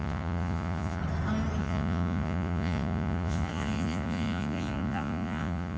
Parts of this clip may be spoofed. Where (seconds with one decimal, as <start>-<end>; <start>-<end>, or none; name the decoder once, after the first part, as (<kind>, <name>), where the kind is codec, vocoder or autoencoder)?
0.0-1.0 (vocoder, Vocos); 1.6-5.8